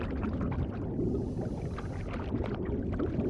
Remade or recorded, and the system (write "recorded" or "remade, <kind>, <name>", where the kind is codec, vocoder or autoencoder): recorded